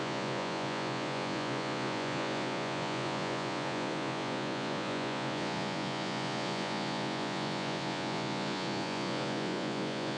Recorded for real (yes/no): no